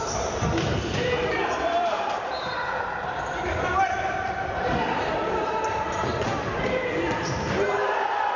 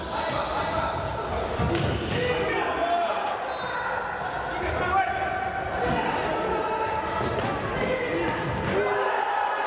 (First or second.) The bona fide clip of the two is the second